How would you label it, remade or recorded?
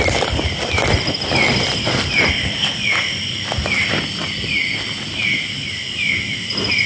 recorded